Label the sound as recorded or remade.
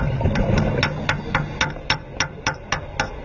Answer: recorded